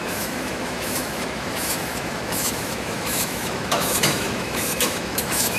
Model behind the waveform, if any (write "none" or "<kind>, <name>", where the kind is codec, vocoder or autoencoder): autoencoder, DAC-VAE